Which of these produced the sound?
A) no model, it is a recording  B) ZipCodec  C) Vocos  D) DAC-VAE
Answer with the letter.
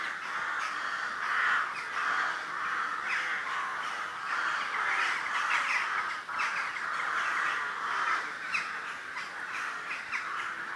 A